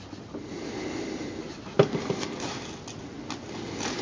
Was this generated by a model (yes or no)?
no